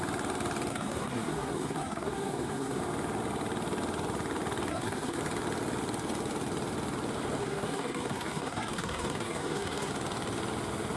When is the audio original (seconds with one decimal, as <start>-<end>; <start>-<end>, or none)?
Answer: 0.0-0.7; 2.8-4.7; 5.2-7.4; 9.9-11.0